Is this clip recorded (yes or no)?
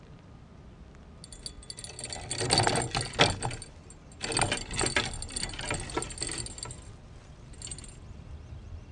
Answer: yes